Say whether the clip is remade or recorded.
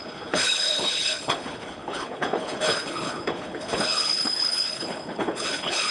remade